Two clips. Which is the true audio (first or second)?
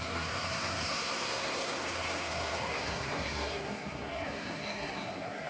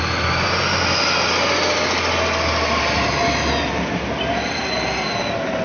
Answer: second